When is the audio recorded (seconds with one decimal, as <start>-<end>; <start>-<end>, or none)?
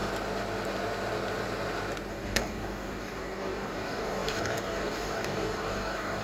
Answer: 0.0-2.1